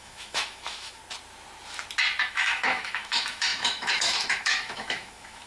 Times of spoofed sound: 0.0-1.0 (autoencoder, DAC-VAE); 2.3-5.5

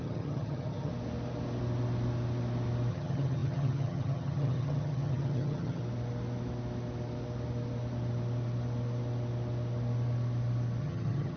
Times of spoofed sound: 0.0-0.9 (vocoder, HiFi-GAN); 2.9-5.8; 10.8-11.4

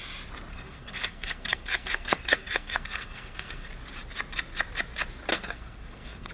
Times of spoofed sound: 0.5-3.7 (codec, SNAC); 5.3-6.3

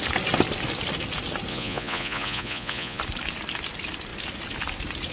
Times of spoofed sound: 1.5-3.0 (vocoder, Vocos)

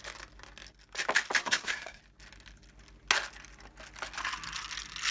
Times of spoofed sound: 1.4-2.0 (codec, SNAC)

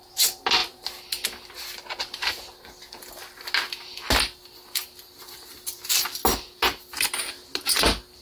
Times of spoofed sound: none

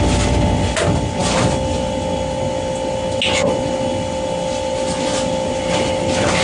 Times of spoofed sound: none